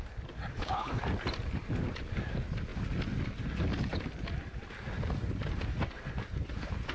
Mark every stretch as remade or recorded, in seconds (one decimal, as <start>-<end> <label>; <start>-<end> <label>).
0.0-0.5 recorded; 0.5-1.0 remade; 1.0-6.9 recorded